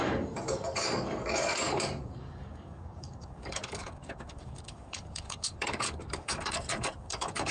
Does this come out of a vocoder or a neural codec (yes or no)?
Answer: yes